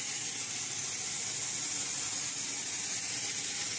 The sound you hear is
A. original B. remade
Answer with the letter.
A